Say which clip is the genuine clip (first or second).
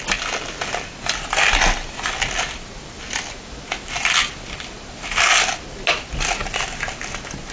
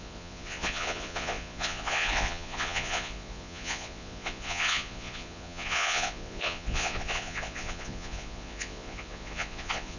first